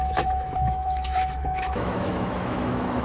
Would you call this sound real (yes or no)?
no